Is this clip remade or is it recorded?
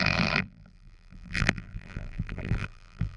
remade